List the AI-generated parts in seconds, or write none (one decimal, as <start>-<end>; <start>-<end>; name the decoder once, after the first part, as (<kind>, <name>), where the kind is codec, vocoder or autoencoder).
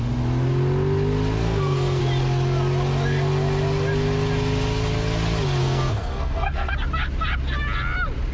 1.4-2.0 (codec, SNAC); 5.6-6.7